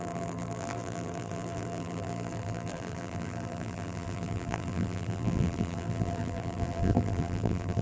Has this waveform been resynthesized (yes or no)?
yes